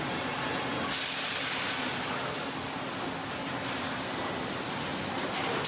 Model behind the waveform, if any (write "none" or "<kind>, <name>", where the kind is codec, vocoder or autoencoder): none